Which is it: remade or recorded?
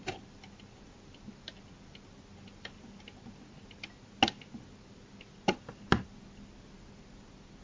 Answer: recorded